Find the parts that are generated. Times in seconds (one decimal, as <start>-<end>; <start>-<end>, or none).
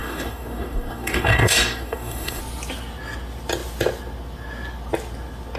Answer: 0.0-2.4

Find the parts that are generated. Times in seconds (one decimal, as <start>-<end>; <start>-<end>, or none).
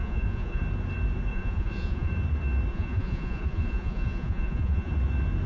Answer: 0.0-0.6; 1.3-2.1; 2.7-4.9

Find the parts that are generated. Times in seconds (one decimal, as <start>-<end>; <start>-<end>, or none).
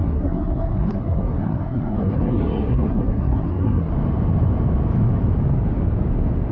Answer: 0.0-3.9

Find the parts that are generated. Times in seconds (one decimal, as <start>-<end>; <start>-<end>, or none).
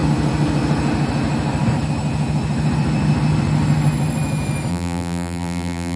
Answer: 4.7-6.0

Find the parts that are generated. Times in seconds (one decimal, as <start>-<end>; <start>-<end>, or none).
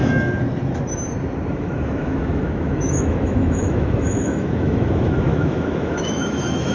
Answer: 1.5-6.7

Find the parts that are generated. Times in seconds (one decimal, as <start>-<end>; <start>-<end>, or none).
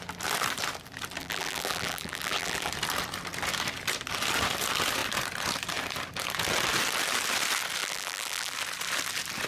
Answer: 1.2-2.7; 7.8-8.5